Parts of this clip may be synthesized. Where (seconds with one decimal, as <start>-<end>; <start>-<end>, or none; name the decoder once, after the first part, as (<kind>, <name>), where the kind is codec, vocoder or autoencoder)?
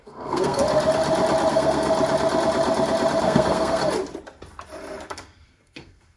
0.0-0.6 (codec, SNAC); 1.5-1.9; 3.2-3.8; 5.1-6.2